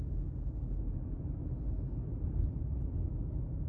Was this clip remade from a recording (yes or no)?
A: no